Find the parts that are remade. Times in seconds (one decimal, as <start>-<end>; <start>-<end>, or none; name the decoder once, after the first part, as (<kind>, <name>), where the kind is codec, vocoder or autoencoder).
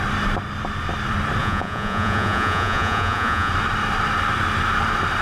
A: 1.4-3.5 (vocoder, Vocos)